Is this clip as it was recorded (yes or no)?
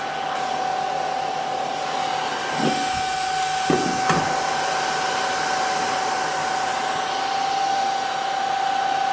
yes